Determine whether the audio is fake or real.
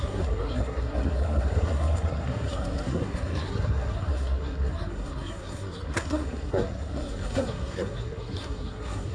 fake